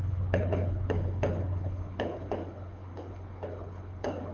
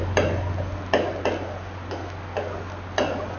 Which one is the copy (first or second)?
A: first